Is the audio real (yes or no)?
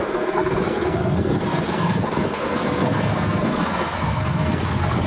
no